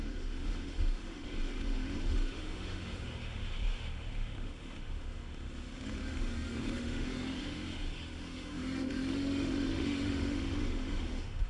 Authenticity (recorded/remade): remade